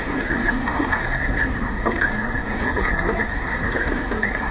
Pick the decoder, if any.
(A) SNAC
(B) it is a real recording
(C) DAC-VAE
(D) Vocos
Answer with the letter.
A